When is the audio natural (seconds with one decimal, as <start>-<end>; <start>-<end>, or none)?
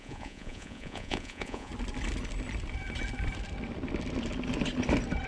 1.7-5.3